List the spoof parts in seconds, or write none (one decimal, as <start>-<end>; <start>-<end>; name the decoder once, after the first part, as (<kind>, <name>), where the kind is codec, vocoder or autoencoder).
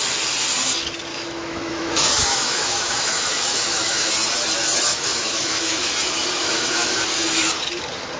1.1-4.1 (autoencoder, DAC-VAE); 4.9-5.9; 6.4-7.0